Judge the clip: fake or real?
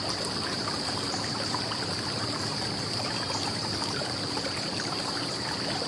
fake